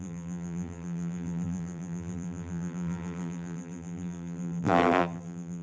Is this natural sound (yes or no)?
no